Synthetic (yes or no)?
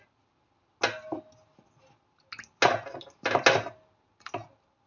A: no